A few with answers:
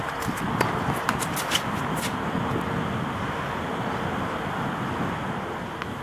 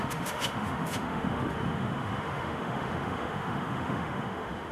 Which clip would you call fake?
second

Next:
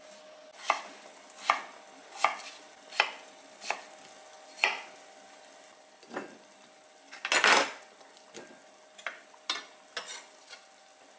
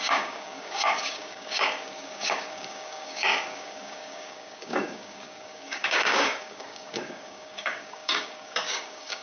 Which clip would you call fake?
second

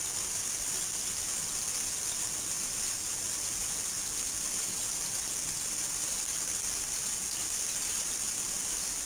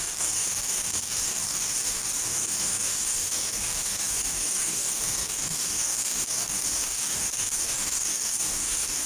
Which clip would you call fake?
second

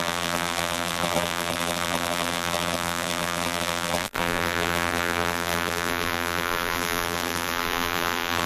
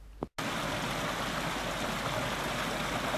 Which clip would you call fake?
first